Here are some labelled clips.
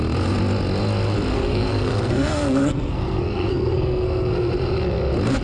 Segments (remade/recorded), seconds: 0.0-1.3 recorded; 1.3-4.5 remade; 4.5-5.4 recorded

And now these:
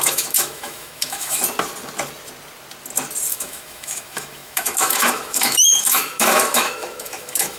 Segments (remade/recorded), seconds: 0.0-1.4 remade; 1.4-3.3 recorded; 3.3-7.6 remade

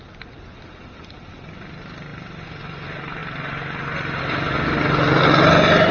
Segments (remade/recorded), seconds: 0.0-5.9 recorded

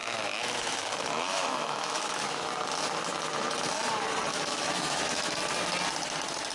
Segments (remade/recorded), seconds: 0.0-2.5 remade; 2.5-4.3 recorded; 4.3-5.4 remade; 5.4-6.5 recorded

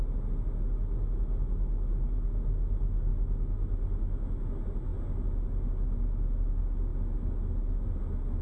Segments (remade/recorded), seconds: 0.0-8.4 recorded